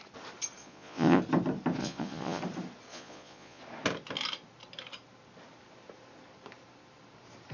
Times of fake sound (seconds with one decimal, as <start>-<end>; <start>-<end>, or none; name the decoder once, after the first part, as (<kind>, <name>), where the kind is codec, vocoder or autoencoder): 0.6-1.2 (vocoder, Vocos); 1.8-2.4; 2.9-3.6